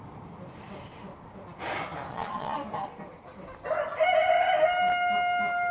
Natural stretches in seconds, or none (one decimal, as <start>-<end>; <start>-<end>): 0.0-2.1; 2.6-5.7

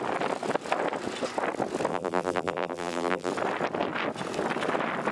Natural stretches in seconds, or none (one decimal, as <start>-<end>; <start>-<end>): 0.0-1.9; 3.3-5.1

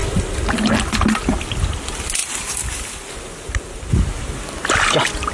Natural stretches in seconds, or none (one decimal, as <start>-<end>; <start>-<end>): 0.0-5.3

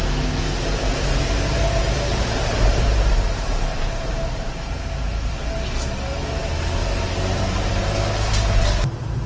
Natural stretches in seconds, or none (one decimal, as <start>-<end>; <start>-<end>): 0.0-0.9; 4.9-6.8; 7.7-9.3

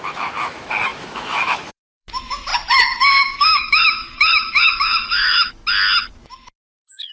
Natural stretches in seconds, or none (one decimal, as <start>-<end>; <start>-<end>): 2.5-3.2; 5.6-6.1

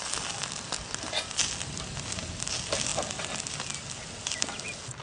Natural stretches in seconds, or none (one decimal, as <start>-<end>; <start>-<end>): 0.0-5.0

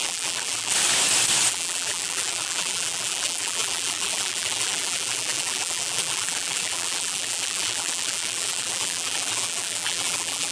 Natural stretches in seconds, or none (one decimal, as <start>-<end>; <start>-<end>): 0.7-1.5

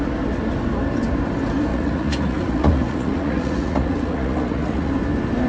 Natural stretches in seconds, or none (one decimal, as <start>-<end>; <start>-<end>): 0.0-1.7; 4.9-5.5